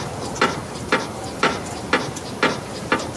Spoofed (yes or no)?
no